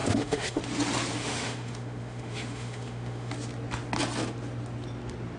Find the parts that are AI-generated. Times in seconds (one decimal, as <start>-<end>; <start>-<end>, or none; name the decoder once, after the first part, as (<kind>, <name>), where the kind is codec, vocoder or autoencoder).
0.0-0.6 (autoencoder, DAC-VAE); 1.2-3.3